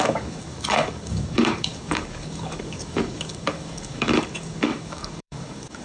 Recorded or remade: remade